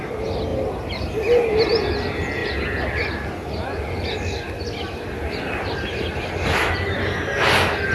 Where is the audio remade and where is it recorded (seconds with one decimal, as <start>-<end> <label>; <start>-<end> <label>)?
0.0-7.9 recorded